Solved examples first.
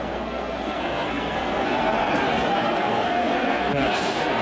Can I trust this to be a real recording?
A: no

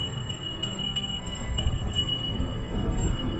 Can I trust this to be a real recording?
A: no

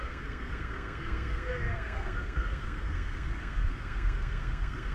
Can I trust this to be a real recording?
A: no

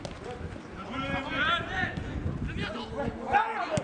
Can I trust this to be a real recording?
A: yes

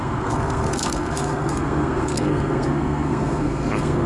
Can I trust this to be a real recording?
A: no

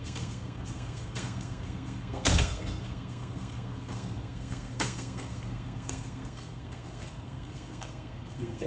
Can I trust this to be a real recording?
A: no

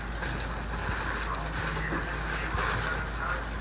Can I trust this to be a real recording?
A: yes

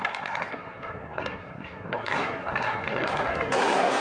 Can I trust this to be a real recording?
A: no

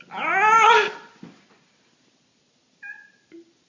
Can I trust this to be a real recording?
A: yes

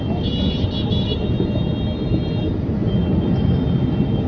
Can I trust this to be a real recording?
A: yes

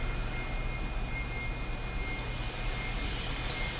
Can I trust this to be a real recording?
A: yes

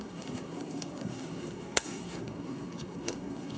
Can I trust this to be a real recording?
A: no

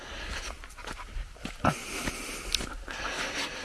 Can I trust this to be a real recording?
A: yes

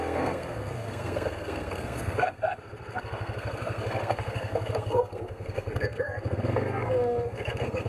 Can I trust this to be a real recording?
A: no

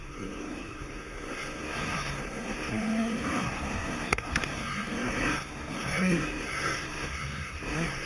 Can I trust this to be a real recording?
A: no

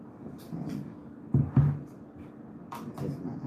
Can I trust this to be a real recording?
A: yes